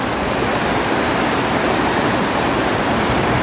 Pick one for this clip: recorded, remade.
recorded